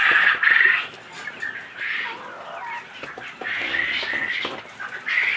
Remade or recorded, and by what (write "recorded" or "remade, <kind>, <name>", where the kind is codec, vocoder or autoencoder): recorded